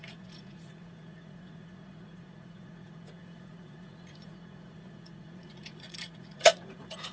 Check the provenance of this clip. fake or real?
fake